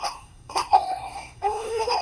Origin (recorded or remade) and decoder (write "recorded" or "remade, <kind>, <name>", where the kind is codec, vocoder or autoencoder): remade, codec, SNAC